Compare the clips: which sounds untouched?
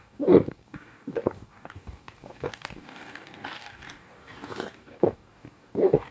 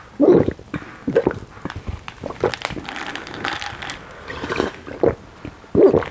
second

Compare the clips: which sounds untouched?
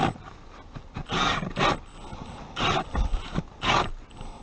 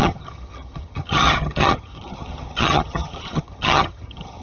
first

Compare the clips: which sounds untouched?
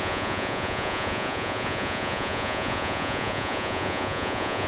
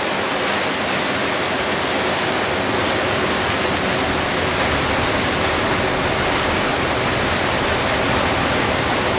second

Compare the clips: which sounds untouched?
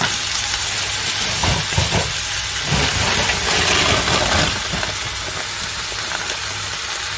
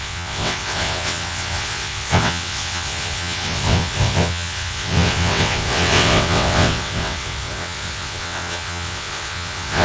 first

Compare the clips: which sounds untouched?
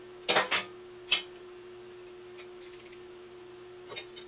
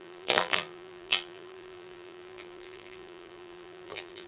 first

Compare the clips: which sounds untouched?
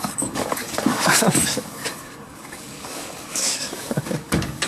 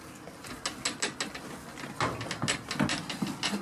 second